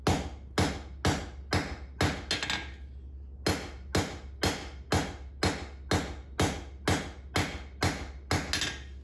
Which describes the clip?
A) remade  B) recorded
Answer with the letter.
B